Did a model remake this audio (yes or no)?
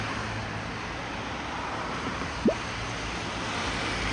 no